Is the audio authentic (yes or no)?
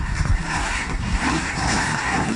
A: no